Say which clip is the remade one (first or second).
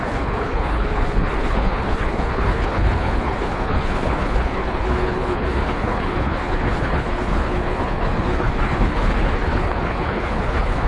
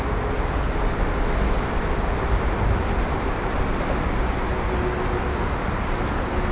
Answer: first